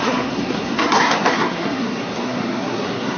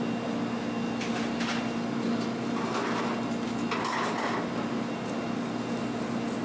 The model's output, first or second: first